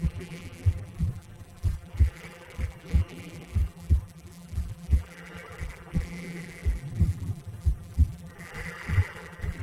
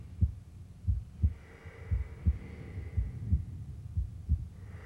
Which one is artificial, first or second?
first